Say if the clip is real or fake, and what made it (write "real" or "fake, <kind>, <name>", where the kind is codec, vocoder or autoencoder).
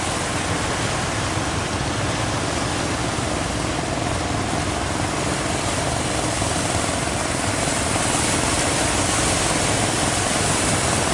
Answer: real